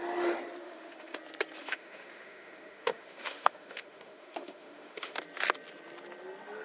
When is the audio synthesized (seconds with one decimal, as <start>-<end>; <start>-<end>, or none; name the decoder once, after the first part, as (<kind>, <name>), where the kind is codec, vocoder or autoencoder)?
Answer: 0.6-1.2 (autoencoder, DAC-VAE); 1.6-5.2

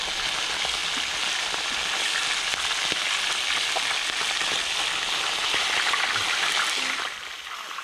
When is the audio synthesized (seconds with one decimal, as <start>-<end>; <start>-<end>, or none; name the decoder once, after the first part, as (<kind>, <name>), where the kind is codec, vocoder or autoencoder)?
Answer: none

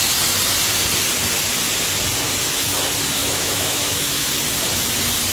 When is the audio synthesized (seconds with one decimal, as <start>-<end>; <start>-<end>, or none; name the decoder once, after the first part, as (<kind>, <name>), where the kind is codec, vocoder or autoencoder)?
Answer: 3.2-4.3 (autoencoder, DAC-VAE)